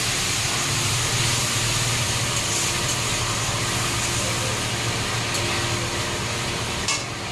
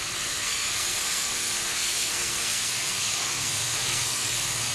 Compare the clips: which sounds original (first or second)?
first